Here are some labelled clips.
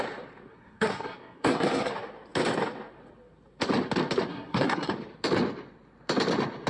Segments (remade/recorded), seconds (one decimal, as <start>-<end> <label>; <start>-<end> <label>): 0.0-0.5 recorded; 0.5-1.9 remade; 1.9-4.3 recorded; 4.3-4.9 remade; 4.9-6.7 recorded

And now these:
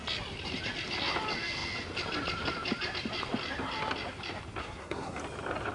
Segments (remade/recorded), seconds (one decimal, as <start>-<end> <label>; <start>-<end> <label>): 0.0-4.6 recorded; 4.6-5.2 remade; 5.2-5.7 recorded

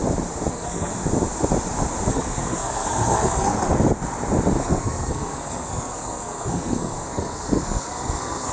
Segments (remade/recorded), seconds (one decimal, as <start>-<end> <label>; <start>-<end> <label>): 0.0-0.5 recorded; 0.5-0.9 remade; 0.9-2.1 recorded; 2.1-3.5 remade; 3.5-4.6 recorded; 4.6-8.5 remade